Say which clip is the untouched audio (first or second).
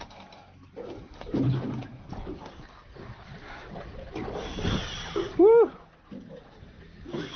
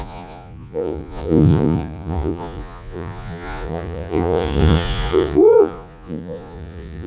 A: first